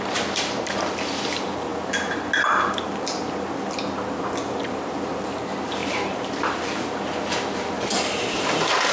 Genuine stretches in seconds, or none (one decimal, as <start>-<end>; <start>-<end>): 0.0-5.8; 6.6-8.9